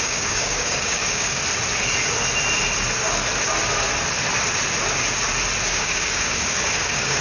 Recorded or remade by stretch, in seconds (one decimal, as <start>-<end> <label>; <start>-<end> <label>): 0.0-1.4 remade; 1.4-5.7 recorded; 5.7-7.2 remade